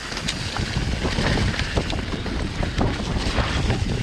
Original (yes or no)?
yes